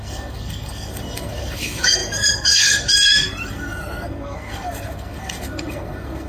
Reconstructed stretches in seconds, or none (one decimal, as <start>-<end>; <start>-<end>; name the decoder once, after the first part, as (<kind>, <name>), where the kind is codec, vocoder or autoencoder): 0.0-6.3 (codec, SNAC)